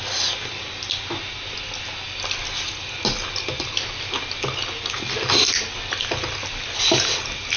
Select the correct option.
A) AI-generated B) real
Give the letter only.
B